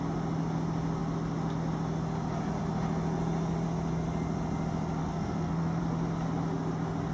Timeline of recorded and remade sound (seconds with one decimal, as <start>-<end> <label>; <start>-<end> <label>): 0.0-5.0 recorded; 5.0-5.8 remade; 5.8-7.1 recorded